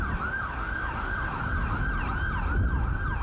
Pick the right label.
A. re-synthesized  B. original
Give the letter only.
B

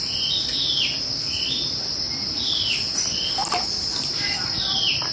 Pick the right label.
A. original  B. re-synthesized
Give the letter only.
A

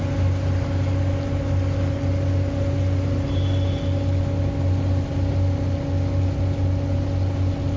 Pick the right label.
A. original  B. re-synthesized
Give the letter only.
A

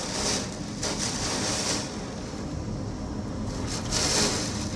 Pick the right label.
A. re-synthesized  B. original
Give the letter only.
B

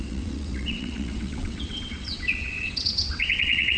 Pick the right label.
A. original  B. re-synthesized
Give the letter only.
B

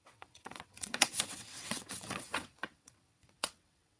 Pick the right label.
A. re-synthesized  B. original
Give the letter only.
A